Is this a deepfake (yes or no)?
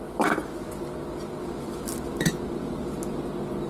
no